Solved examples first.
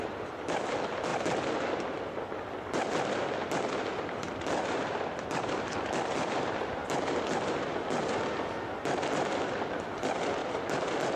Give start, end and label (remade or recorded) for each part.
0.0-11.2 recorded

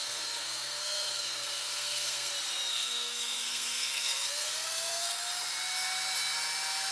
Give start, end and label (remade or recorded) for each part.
0.0-2.3 remade; 2.3-2.7 recorded; 2.7-5.2 remade; 5.2-6.9 recorded

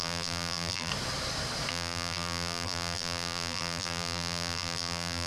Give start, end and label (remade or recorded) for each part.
0.0-0.9 remade; 0.9-1.7 recorded; 1.7-5.3 remade

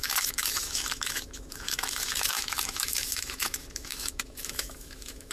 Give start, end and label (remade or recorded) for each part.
0.0-5.3 remade